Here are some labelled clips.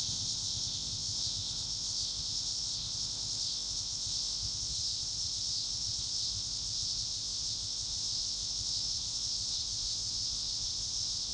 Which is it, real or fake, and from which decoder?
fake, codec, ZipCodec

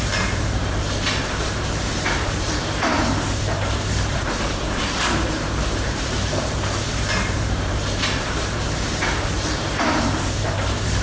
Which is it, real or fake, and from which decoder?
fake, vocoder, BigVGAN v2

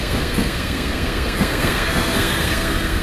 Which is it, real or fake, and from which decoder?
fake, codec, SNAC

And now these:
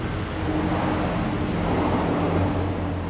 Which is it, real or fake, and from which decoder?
real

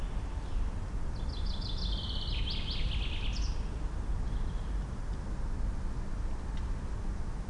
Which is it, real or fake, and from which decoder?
real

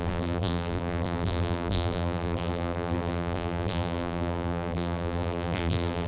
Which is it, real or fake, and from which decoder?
fake, vocoder, BigVGAN v2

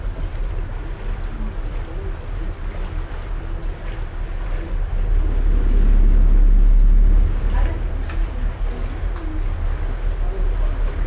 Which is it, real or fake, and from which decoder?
real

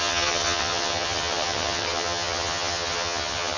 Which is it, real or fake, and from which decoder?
fake, vocoder, HiFi-GAN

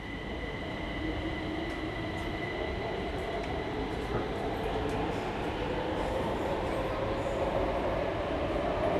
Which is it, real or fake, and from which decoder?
real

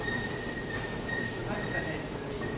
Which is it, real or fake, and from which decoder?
real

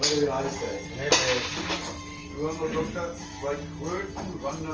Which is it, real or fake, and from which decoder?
real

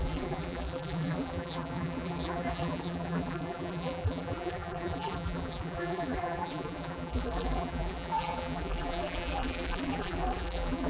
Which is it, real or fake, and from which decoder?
fake, vocoder, BigVGAN v2